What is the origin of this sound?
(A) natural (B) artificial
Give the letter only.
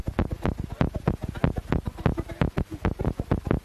A